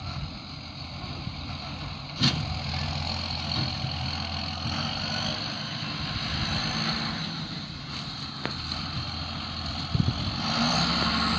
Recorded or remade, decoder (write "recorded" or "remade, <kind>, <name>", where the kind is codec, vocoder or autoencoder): recorded